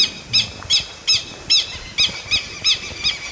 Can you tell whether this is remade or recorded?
recorded